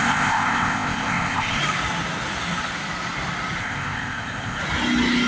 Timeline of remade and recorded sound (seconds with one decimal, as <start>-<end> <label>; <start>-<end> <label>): 0.0-1.6 remade; 1.6-3.6 recorded; 3.6-4.6 remade; 4.6-5.3 recorded